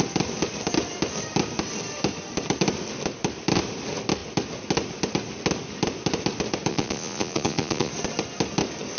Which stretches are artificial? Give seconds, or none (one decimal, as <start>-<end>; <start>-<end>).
6.7-7.9